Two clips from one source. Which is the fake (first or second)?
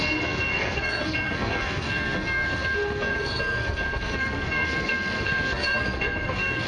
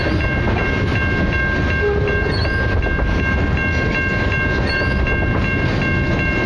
first